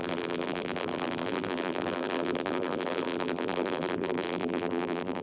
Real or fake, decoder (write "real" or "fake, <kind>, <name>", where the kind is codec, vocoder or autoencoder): fake, vocoder, BigVGAN v2